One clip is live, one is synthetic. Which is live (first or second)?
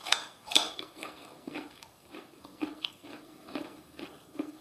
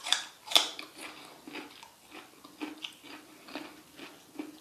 second